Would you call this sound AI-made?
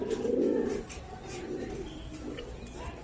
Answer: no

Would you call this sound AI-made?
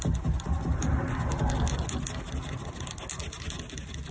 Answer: no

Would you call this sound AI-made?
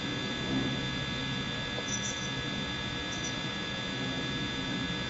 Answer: no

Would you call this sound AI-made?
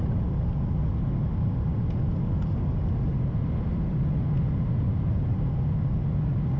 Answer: no